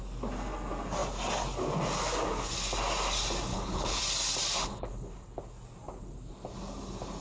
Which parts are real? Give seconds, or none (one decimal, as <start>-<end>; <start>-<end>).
0.0-3.5; 4.0-4.6; 5.4-7.2